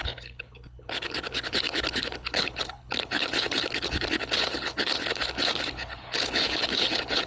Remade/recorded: remade